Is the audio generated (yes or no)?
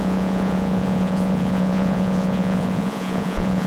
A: yes